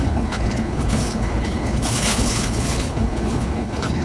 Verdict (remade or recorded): remade